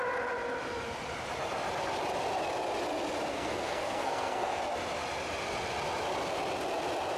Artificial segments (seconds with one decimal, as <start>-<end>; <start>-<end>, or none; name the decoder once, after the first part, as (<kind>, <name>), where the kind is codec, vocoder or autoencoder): 3.3-4.6 (codec, SNAC)